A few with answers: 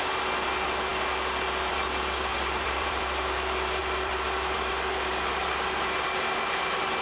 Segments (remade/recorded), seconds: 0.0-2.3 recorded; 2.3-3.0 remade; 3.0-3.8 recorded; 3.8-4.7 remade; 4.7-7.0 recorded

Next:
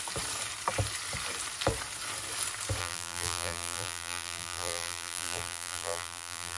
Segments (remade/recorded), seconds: 0.0-2.8 recorded; 2.8-6.6 remade

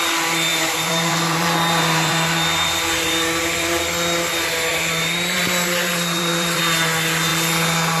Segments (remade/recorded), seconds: 0.0-0.5 recorded; 0.5-3.8 remade; 3.8-4.7 recorded; 4.7-6.6 remade; 6.6-8.0 recorded